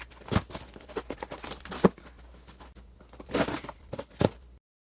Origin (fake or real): real